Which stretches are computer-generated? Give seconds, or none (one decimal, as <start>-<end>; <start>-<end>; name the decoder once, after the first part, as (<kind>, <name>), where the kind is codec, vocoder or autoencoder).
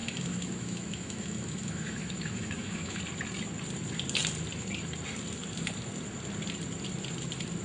0.0-3.0 (autoencoder, DAC-VAE)